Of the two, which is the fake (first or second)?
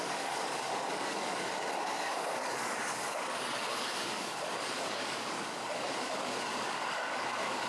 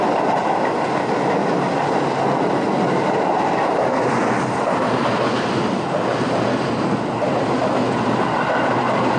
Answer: first